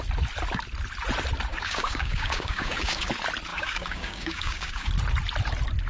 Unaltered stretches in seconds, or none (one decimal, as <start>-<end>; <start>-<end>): 0.0-1.5; 3.1-3.5; 4.9-5.9